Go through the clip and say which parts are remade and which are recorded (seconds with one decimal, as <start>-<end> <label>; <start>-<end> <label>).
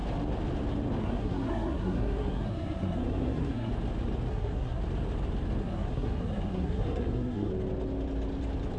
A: 0.0-1.0 recorded; 1.0-3.7 remade; 3.7-4.3 recorded; 4.3-4.8 remade; 4.8-5.6 recorded; 5.6-7.5 remade; 7.5-8.8 recorded